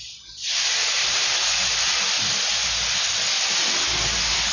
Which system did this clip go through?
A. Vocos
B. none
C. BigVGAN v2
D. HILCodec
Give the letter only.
B